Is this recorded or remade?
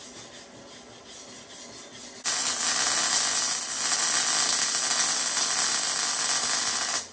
recorded